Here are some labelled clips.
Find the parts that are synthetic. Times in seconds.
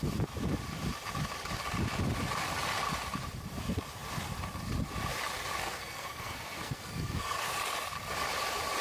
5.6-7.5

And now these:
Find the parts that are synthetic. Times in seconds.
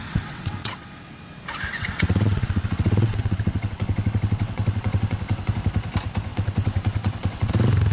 0.0-0.9; 1.7-5.5; 6.3-7.5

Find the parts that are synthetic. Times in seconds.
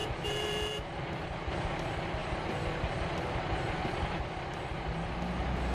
0.0-1.7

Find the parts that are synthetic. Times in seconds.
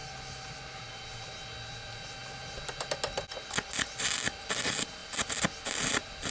0.0-0.6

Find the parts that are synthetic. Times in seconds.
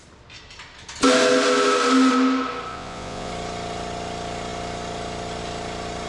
2.7-3.3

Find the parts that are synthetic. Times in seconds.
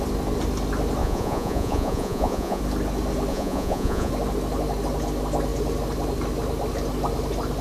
1.0-2.6; 3.3-4.1